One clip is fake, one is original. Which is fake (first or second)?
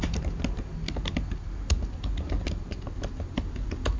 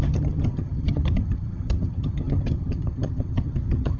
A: second